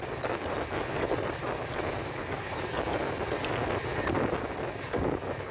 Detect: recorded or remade recorded